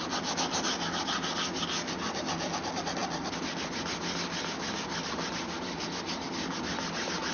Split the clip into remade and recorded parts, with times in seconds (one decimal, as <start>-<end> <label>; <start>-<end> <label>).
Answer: 0.0-7.3 recorded